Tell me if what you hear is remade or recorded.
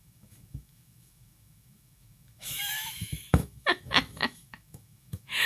remade